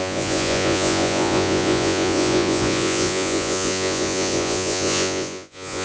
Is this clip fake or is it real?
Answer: fake